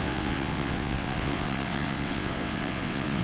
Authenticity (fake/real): fake